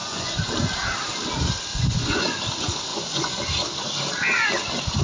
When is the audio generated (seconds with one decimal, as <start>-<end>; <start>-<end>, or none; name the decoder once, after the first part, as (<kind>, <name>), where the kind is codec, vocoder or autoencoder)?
0.0-0.5 (vocoder, Vocos); 1.7-2.4; 2.9-3.4